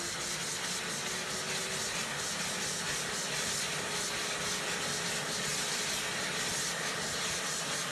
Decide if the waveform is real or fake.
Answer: real